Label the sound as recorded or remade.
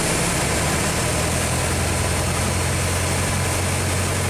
recorded